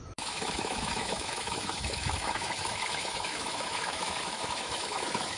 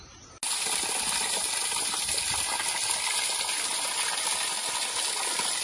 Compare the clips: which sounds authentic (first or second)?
second